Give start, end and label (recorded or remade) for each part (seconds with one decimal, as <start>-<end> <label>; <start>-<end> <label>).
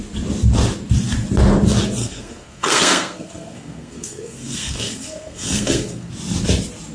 0.0-2.0 recorded; 2.0-6.1 remade; 6.1-6.9 recorded